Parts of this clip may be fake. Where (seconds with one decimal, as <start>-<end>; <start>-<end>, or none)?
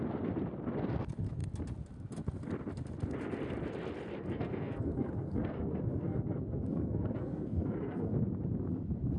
4.2-8.1